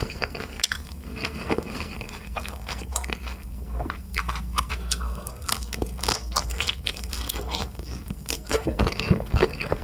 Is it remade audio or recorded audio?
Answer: remade